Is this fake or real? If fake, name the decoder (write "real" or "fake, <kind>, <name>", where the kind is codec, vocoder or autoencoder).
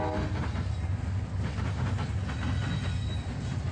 real